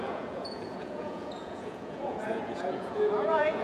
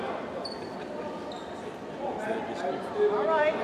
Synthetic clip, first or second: first